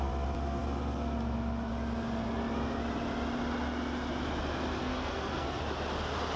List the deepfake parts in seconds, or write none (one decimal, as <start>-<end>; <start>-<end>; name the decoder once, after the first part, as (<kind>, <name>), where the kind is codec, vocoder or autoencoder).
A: 4.8-5.6 (codec, SNAC)